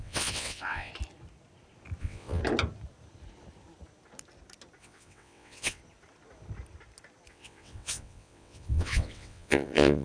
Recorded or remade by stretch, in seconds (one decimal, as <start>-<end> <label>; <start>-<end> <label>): 0.0-0.9 remade; 0.9-2.0 recorded; 2.0-2.4 remade; 2.4-4.8 recorded; 4.8-5.8 remade; 5.8-7.3 recorded; 7.3-10.0 remade